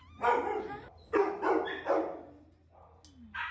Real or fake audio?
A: real